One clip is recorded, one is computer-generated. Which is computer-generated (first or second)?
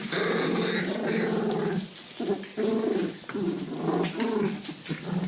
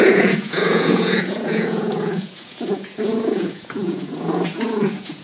second